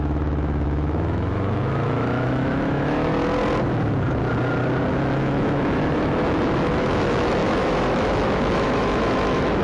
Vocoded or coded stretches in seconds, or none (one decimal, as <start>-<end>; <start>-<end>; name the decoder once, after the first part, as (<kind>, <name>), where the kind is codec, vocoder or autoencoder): 0.0-3.1 (autoencoder, DAC-VAE); 4.9-9.6